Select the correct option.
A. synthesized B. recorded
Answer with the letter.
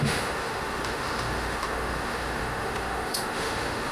A